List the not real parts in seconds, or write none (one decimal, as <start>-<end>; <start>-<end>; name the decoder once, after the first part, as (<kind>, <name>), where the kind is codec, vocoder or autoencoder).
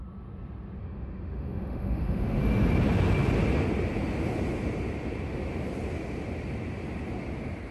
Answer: 0.8-2.4 (autoencoder, DAC-VAE)